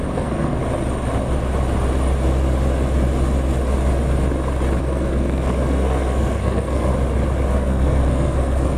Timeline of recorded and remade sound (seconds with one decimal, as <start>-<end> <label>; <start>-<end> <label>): 0.0-0.6 remade; 0.6-4.8 recorded; 4.8-6.9 remade; 6.9-7.5 recorded; 7.5-8.8 remade